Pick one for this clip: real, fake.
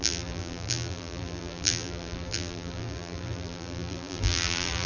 fake